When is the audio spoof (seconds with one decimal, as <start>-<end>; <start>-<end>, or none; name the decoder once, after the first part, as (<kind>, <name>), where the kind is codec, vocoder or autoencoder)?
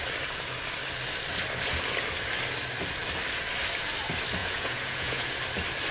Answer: 4.4-5.3 (vocoder, Vocos)